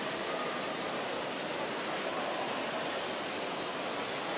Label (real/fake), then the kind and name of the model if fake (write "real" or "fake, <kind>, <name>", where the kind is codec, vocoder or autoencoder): real